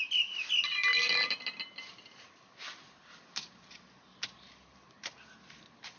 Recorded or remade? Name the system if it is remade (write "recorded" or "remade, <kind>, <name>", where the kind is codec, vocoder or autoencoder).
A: recorded